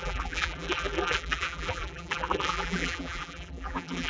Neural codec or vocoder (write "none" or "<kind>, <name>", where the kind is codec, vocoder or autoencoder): vocoder, BigVGAN v2